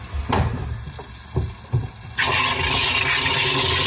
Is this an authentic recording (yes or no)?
yes